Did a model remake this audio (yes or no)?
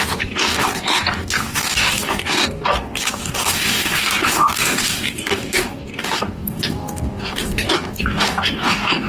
yes